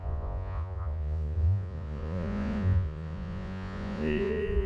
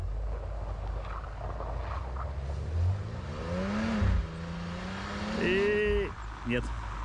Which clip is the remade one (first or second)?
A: first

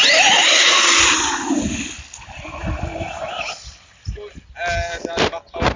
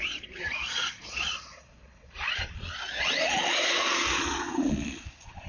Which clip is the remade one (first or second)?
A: second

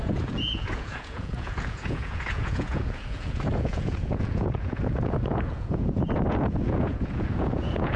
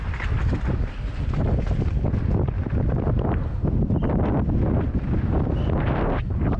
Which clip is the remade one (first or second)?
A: first